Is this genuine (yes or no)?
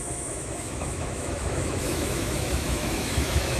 no